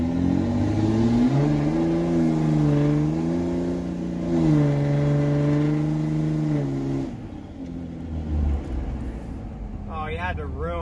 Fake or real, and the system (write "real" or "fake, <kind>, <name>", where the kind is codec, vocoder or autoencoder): real